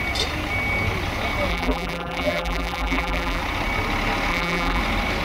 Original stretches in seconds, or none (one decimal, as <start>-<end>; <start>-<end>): 0.0-1.5; 3.4-4.3; 4.8-5.2